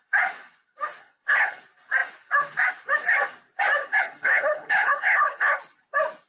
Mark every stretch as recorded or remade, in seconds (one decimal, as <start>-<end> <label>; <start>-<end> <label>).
0.0-1.0 recorded; 1.0-1.6 remade; 1.6-3.8 recorded; 3.8-5.6 remade; 5.6-6.3 recorded